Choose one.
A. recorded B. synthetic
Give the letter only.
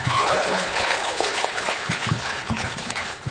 B